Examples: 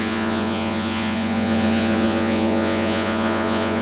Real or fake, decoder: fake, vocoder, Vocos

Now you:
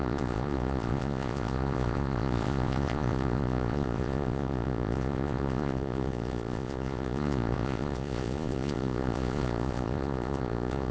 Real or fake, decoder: fake, vocoder, Vocos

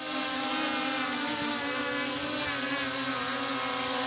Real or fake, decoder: real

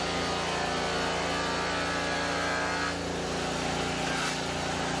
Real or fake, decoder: real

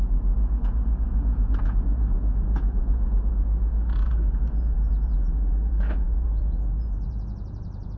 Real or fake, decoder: fake, vocoder, Vocos